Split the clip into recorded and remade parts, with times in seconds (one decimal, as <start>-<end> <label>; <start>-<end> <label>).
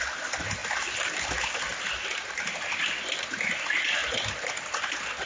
0.0-1.7 recorded; 1.7-2.4 remade; 2.4-5.3 recorded